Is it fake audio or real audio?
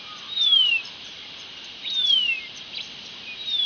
real